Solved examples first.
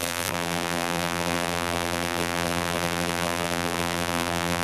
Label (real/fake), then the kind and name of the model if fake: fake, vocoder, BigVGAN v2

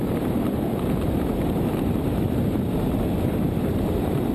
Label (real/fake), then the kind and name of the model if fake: fake, vocoder, BigVGAN v2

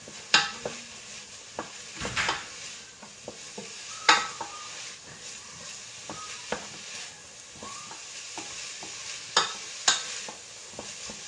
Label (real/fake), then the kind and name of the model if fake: real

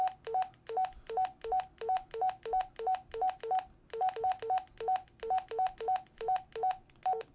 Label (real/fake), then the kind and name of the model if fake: real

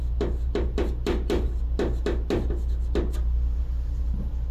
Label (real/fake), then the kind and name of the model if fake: real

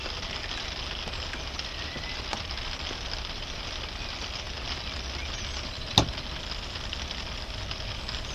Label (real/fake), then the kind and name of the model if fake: real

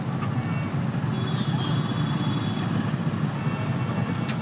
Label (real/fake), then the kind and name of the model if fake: real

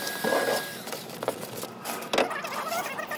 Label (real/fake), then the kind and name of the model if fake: real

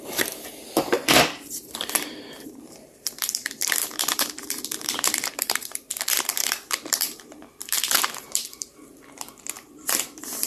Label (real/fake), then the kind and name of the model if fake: fake, vocoder, BigVGAN v2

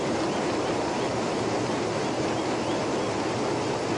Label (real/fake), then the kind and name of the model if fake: real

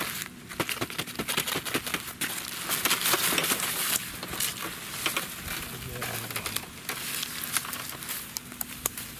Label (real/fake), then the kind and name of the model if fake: real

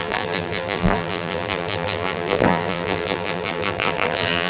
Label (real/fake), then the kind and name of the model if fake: fake, vocoder, BigVGAN v2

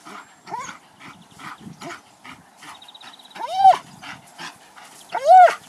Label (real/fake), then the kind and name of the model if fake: fake, vocoder, BigVGAN v2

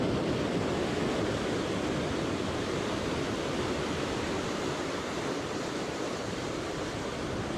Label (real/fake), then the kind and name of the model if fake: fake, vocoder, BigVGAN v2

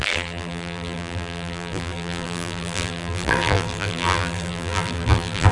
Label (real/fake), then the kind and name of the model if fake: fake, vocoder, BigVGAN v2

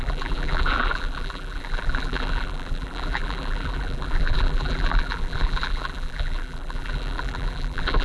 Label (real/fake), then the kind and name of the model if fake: fake, vocoder, BigVGAN v2